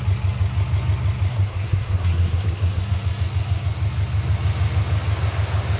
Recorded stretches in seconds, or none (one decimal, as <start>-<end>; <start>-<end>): 0.0-1.3; 2.8-5.8